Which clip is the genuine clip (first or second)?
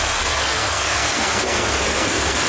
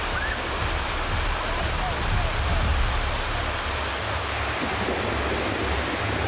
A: second